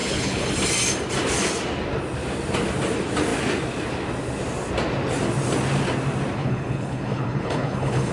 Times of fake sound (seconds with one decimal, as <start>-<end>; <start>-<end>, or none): 0.0-0.5; 6.4-8.1